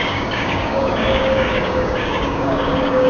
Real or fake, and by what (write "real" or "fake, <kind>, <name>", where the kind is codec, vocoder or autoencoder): fake, codec, DAC